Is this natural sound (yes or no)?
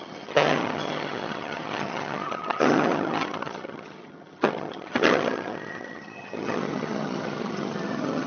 no